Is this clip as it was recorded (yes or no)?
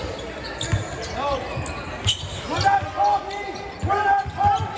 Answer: yes